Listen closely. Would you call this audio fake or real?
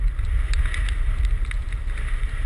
real